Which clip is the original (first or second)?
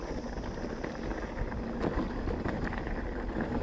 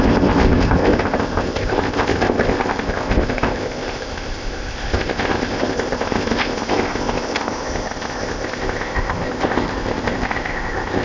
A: first